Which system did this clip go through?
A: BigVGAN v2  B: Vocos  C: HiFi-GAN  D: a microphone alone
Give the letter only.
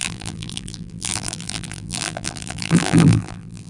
A